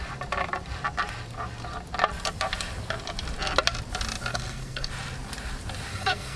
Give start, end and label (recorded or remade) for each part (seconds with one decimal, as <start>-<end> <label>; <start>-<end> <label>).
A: 0.0-4.3 recorded; 4.3-4.9 remade; 4.9-5.9 recorded; 5.9-6.4 remade